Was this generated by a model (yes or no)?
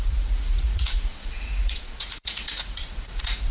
yes